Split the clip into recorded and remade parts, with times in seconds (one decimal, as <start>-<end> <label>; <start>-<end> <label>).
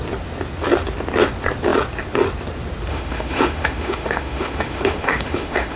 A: 0.0-2.9 recorded; 2.9-5.8 remade